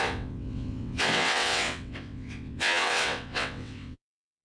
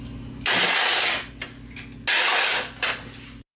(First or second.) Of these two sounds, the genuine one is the second